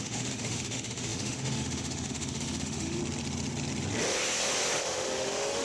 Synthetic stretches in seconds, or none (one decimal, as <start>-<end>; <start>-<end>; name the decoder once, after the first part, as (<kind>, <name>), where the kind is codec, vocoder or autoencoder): 0.0-3.0 (autoencoder, DAC-VAE); 4.8-5.6